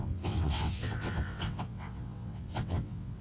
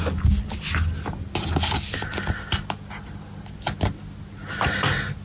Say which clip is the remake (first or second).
first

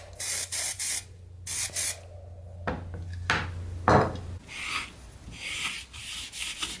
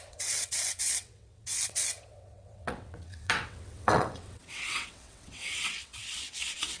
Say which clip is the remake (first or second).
second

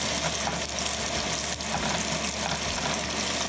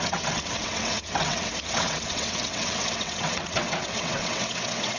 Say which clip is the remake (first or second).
second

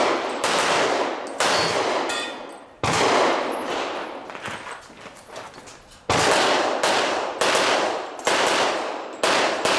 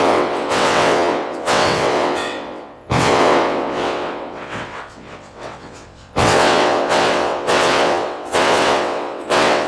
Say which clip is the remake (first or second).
second